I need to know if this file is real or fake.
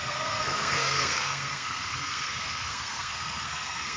fake